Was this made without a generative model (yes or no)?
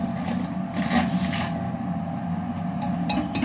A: yes